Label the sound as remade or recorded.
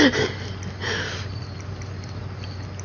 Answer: recorded